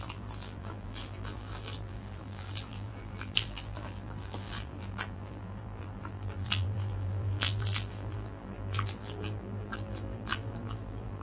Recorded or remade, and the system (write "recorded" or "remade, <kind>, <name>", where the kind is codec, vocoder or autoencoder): remade, vocoder, BigVGAN v2